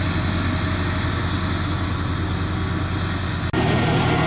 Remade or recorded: recorded